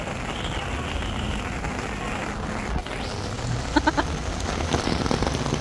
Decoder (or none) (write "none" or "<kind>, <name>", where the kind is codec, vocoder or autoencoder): none